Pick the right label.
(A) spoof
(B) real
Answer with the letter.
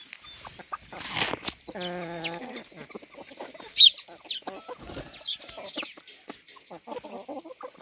B